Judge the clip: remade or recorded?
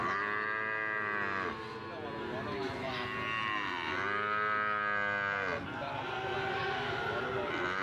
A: recorded